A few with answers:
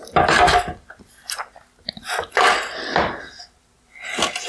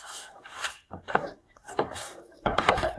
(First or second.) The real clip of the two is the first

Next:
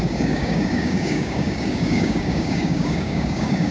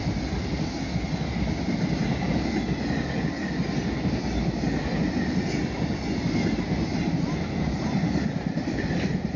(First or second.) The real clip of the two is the second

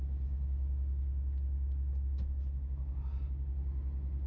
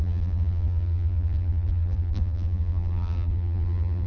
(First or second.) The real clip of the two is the first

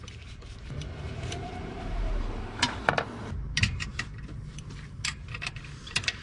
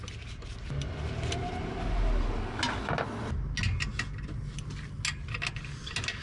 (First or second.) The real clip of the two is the second